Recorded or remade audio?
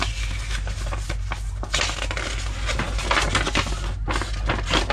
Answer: recorded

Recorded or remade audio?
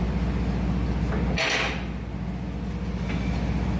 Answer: recorded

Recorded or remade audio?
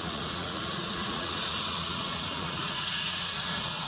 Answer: remade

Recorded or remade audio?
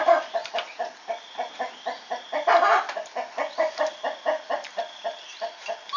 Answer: recorded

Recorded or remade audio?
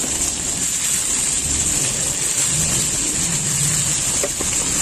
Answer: recorded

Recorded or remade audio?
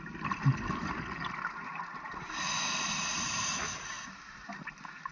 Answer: recorded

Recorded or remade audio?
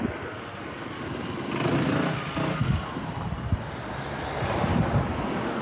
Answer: recorded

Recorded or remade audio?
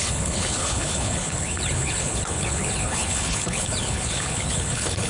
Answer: remade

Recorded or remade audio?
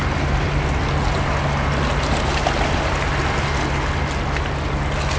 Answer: recorded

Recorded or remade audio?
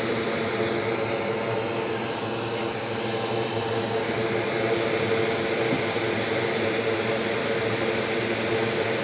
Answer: recorded